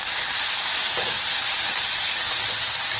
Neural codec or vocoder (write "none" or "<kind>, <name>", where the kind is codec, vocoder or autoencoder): none